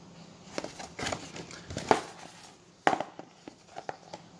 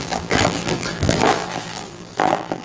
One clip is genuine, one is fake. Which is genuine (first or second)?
first